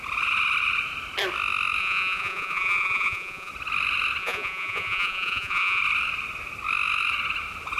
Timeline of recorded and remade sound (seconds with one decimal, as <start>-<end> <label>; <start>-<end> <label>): 0.0-1.8 recorded; 1.8-3.5 remade; 3.5-4.2 recorded; 4.2-5.8 remade; 5.8-7.8 recorded